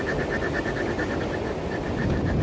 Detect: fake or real real